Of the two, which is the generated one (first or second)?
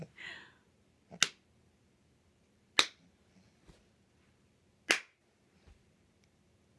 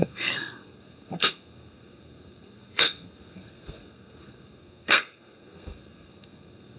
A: second